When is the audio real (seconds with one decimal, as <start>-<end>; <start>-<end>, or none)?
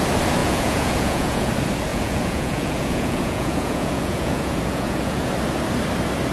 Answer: 0.0-0.4; 1.5-1.9; 5.3-6.3